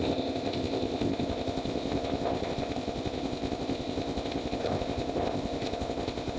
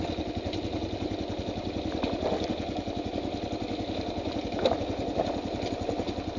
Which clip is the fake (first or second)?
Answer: first